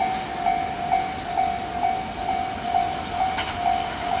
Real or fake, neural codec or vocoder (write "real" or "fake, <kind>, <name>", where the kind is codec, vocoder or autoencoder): real